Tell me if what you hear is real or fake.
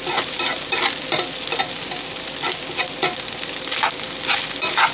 real